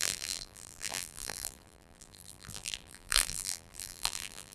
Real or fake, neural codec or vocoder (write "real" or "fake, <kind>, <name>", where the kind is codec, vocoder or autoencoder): fake, vocoder, BigVGAN v2